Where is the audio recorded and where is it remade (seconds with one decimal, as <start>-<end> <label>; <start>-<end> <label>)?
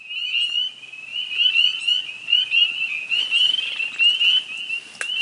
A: 0.0-1.1 recorded; 1.1-3.2 remade; 3.2-5.2 recorded